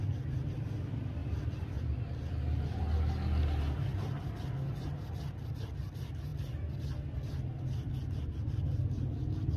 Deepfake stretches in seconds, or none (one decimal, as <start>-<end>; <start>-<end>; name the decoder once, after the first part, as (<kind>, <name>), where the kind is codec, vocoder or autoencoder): none